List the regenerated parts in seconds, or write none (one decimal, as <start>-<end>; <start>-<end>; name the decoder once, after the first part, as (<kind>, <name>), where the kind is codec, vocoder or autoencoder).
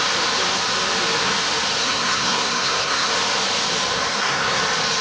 1.8-3.1 (codec, SNAC); 4.1-4.6